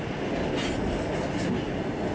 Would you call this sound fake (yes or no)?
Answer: no